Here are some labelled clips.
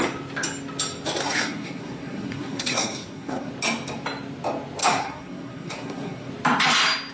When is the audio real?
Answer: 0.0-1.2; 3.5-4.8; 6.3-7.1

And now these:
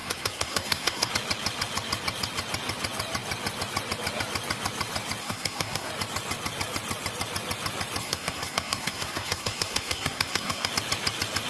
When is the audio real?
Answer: 1.1-5.2; 5.9-8.0; 10.7-11.5

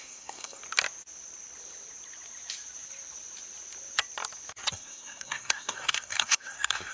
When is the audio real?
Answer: 0.6-4.7